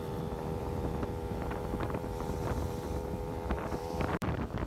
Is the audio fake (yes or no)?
yes